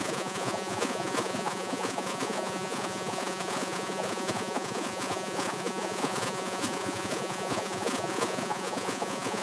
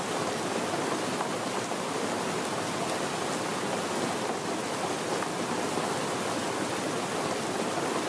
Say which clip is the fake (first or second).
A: first